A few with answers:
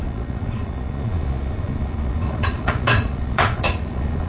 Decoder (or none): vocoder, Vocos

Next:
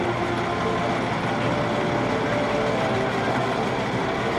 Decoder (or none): none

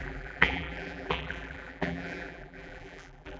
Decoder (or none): vocoder, BigVGAN v2